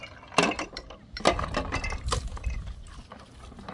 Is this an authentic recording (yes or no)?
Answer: yes